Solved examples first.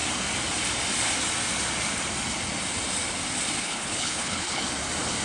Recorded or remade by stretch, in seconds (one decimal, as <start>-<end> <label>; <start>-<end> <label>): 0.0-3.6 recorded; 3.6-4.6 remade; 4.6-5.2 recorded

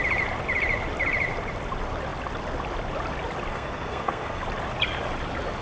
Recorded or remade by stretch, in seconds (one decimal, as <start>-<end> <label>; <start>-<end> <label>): 0.0-3.5 recorded; 3.5-4.4 remade; 4.4-5.6 recorded

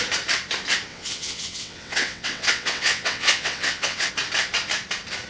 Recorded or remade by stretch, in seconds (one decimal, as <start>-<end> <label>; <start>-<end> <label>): 0.0-0.9 recorded; 0.9-4.1 remade; 4.1-5.3 recorded

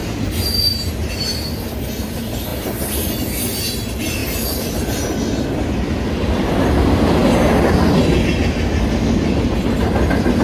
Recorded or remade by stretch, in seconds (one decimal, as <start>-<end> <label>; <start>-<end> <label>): 0.0-10.4 recorded